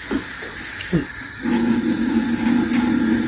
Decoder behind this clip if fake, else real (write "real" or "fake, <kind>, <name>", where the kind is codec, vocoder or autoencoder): real